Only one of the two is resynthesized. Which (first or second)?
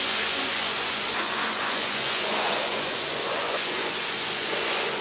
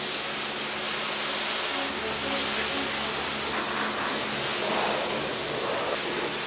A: first